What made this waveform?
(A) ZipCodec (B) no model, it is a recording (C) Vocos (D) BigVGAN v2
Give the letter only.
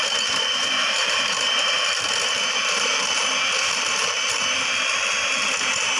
D